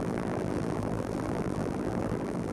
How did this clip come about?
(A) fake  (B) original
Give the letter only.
A